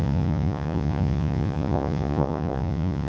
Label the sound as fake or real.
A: fake